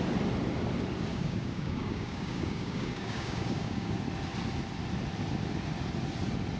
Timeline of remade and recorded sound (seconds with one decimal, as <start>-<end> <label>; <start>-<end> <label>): 0.0-1.1 recorded; 1.1-4.0 remade; 4.0-6.6 recorded